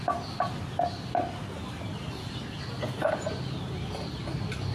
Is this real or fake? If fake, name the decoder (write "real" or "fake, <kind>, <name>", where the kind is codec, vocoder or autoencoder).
real